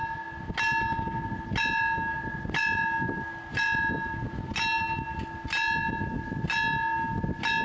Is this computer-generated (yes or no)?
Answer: no